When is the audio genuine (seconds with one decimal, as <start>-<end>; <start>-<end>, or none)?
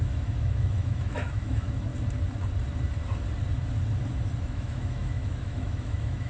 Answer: 1.9-4.4